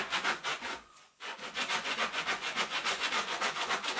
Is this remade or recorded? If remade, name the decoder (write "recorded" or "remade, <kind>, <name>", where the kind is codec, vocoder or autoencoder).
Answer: remade, vocoder, Vocos